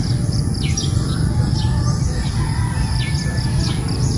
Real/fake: real